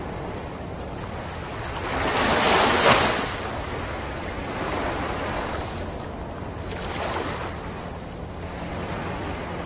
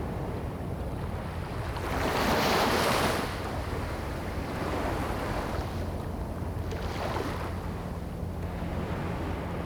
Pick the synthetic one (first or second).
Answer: first